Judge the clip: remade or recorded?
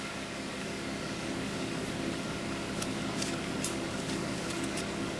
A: remade